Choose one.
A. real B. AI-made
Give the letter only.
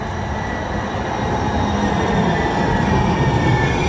A